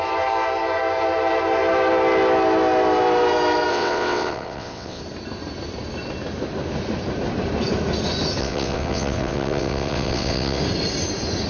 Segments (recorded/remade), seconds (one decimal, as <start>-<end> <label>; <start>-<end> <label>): 0.0-3.7 recorded; 3.7-5.0 remade; 5.0-8.4 recorded; 8.4-10.6 remade; 10.6-11.5 recorded